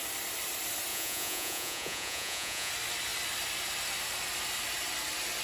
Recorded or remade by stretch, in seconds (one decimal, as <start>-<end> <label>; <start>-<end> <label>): 0.0-0.9 recorded; 0.9-2.7 remade; 2.7-5.4 recorded